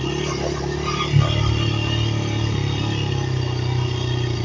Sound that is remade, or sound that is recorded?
recorded